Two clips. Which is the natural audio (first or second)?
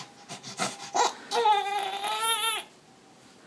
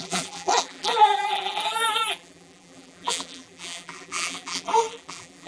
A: first